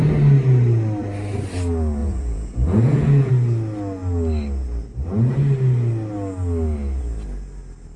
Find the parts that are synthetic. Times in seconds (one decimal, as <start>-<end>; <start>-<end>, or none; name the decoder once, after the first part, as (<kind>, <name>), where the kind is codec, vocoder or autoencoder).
2.0-3.3 (vocoder, Vocos)